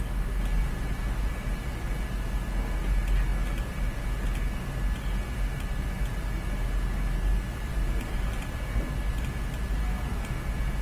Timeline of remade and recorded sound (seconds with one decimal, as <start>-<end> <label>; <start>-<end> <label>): 0.0-0.6 recorded; 0.6-2.0 remade; 2.0-7.7 recorded; 7.7-8.5 remade; 8.5-10.8 recorded